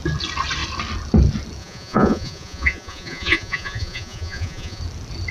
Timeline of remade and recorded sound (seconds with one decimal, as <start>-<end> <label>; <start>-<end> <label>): 0.0-1.6 recorded; 1.6-4.8 remade; 4.8-5.3 recorded